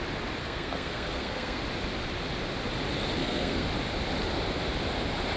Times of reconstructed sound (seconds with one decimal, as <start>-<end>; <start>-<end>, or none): 0.4-1.6; 3.2-3.7